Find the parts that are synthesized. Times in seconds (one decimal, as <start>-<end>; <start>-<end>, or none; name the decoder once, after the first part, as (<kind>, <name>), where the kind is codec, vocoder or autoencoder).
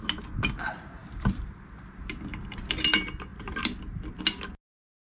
none